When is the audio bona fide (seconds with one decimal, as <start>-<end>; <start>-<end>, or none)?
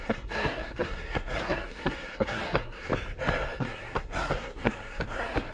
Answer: 2.9-3.6